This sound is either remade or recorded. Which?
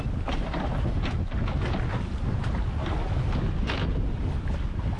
recorded